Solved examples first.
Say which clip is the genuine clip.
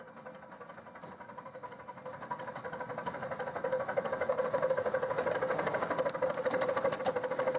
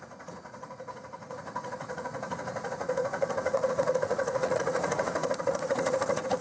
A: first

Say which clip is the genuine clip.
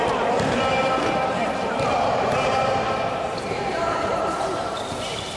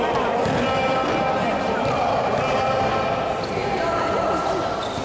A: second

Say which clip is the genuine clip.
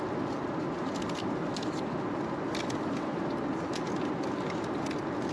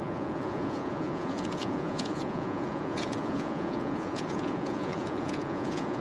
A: first